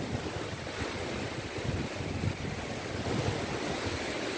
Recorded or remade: recorded